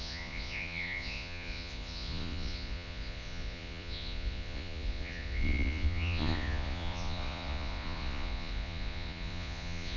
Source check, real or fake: fake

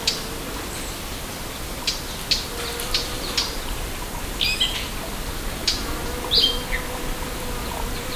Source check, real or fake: real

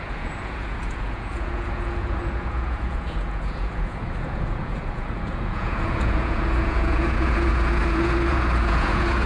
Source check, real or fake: fake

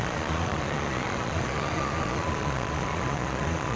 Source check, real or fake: fake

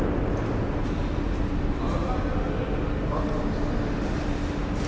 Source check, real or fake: real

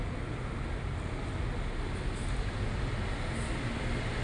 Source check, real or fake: real